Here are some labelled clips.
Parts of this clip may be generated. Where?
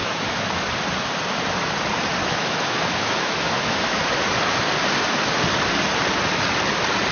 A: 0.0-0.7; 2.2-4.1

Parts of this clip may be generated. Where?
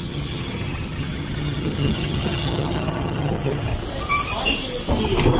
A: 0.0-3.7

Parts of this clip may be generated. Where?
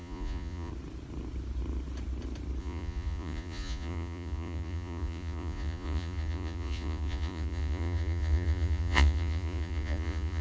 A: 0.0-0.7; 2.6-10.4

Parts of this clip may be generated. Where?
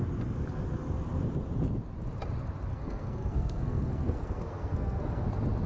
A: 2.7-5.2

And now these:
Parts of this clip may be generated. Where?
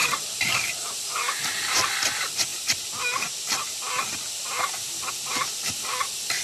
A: 0.0-1.0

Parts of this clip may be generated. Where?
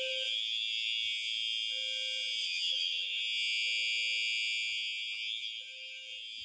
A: 2.4-3.2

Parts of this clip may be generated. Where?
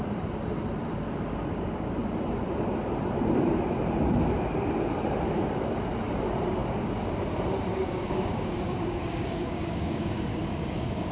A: 6.6-7.1; 7.7-11.1